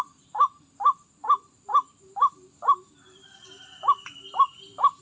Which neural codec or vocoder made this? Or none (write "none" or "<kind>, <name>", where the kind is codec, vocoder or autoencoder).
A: none